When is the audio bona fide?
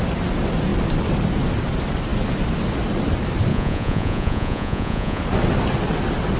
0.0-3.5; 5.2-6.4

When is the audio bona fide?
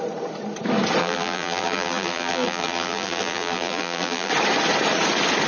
0.0-1.0; 4.3-5.5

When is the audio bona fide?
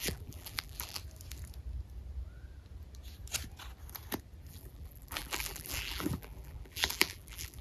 1.0-4.5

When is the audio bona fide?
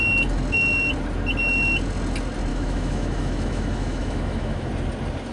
0.0-2.5; 4.7-5.3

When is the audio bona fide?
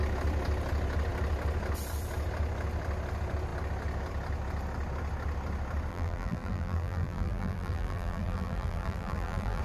0.0-5.9